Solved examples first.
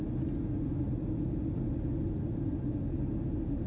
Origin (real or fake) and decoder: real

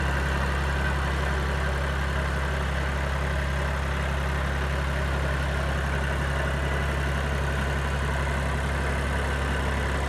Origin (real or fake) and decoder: real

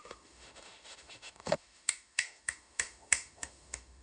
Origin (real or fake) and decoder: fake, autoencoder, DAC-VAE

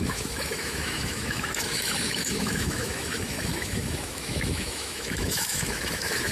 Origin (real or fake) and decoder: fake, autoencoder, DAC-VAE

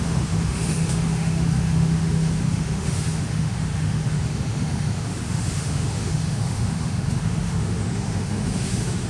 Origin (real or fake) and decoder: fake, autoencoder, DAC-VAE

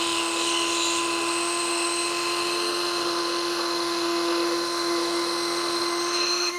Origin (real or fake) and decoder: fake, autoencoder, DAC-VAE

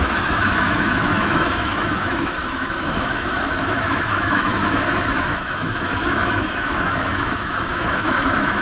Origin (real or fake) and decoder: fake, autoencoder, DAC-VAE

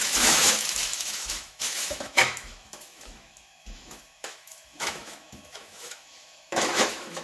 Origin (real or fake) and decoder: fake, autoencoder, DAC-VAE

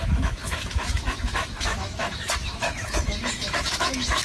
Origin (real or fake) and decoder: fake, autoencoder, DAC-VAE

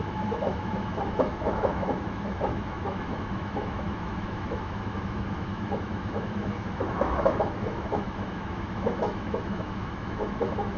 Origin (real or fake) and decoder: fake, autoencoder, DAC-VAE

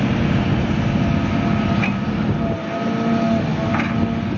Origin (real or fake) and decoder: real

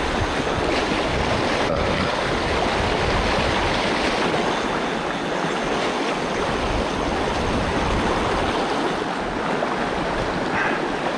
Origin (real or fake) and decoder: real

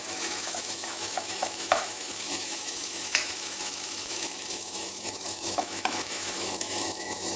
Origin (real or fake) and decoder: fake, autoencoder, DAC-VAE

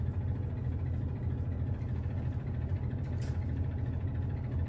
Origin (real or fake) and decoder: real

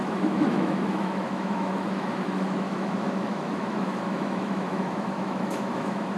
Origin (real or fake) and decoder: fake, autoencoder, DAC-VAE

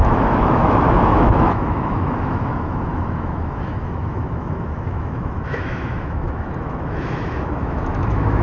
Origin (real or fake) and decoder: fake, autoencoder, DAC-VAE